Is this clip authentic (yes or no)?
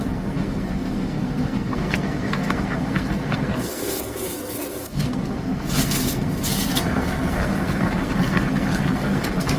no